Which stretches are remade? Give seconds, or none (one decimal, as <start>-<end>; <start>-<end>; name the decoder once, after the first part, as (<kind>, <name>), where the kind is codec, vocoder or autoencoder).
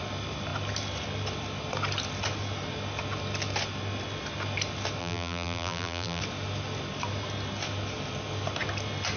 5.0-6.2 (vocoder, BigVGAN v2)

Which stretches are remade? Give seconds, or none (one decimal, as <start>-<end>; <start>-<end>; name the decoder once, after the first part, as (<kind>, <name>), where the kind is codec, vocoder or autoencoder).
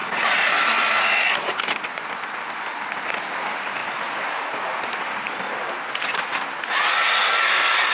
none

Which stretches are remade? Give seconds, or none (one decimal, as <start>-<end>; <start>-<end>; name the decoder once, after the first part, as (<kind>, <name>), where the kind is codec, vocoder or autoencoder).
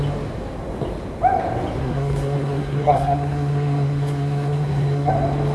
1.8-5.1 (codec, SNAC)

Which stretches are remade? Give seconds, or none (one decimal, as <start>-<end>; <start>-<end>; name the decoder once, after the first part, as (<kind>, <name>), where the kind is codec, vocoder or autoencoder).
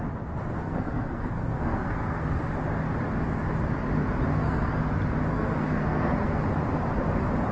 0.6-2.4 (codec, SNAC); 4.3-4.8; 5.3-6.4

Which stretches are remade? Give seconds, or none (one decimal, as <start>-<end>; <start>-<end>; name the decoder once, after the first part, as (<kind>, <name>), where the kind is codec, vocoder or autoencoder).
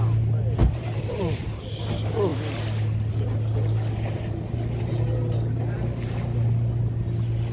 0.6-1.6 (vocoder, BigVGAN v2)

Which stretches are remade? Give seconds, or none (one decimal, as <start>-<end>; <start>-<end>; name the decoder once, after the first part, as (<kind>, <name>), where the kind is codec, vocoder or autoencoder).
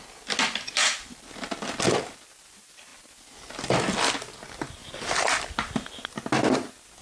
none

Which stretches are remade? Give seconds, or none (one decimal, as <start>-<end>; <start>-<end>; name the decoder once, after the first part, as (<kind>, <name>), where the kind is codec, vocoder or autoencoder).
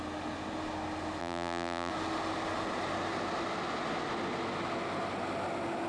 1.2-1.9 (vocoder, BigVGAN v2)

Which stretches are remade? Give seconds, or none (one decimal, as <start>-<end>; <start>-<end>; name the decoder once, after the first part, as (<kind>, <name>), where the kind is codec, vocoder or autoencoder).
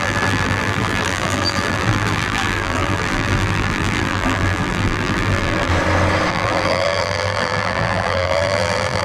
0.0-5.7 (vocoder, BigVGAN v2); 6.3-9.0